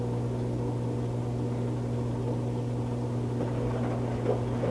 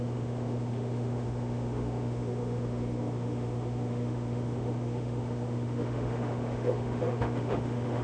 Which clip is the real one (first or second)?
first